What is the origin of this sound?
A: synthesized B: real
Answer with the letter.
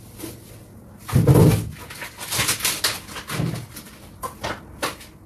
B